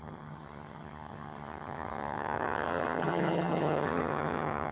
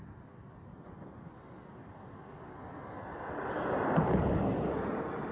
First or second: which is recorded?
second